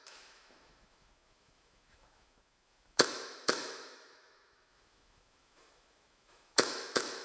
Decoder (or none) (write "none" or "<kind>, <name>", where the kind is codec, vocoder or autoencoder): autoencoder, DAC-VAE